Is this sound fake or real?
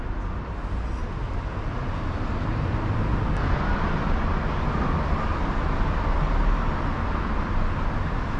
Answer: real